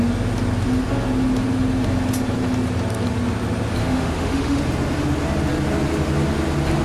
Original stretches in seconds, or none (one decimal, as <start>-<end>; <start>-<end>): 0.0-3.8; 4.6-6.8